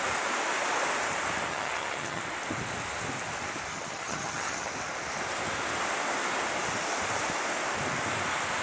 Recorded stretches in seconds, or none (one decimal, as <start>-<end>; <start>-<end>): 0.0-1.5; 2.2-3.7; 4.7-8.6